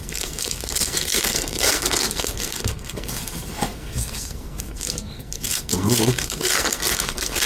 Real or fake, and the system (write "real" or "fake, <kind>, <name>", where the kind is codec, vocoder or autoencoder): fake, codec, SNAC